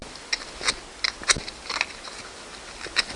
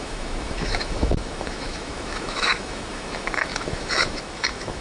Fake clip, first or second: second